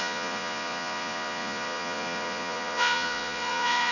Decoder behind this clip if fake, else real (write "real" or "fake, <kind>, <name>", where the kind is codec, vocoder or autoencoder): fake, vocoder, Vocos